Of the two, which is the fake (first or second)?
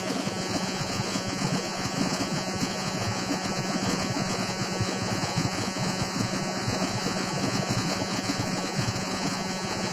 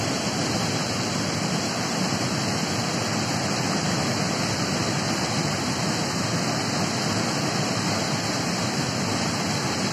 first